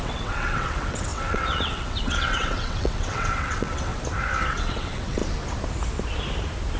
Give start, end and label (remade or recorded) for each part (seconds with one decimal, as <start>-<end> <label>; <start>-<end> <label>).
0.0-3.9 remade; 3.9-4.5 recorded; 4.5-5.2 remade; 5.2-6.8 recorded

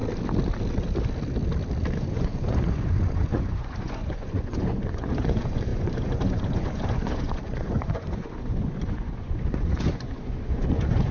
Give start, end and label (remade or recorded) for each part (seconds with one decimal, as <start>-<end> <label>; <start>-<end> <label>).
0.0-2.0 recorded; 2.0-11.1 remade

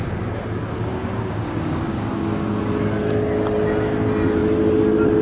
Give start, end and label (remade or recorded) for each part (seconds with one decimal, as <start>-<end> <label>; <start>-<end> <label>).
0.0-0.9 recorded; 0.9-2.6 remade; 2.6-5.2 recorded

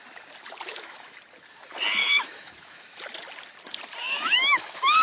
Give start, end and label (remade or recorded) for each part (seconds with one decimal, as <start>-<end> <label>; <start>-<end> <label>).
0.0-0.7 recorded; 0.7-1.2 remade; 1.2-2.0 recorded; 2.0-3.0 remade; 3.0-4.0 recorded; 4.0-5.0 remade

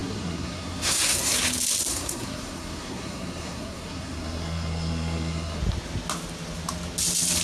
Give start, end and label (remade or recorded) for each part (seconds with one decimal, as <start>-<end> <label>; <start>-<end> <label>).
0.0-1.3 remade; 1.3-1.9 recorded; 1.9-5.6 remade; 5.6-7.4 recorded

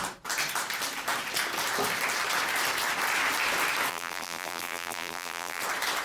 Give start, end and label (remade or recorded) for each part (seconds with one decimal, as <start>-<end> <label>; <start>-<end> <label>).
0.0-3.9 recorded; 3.9-5.6 remade; 5.6-6.0 recorded

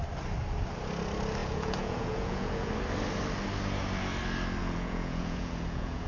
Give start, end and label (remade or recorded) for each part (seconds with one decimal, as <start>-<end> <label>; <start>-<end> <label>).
0.0-1.4 recorded; 1.4-2.7 remade; 2.7-4.6 recorded; 4.6-6.1 remade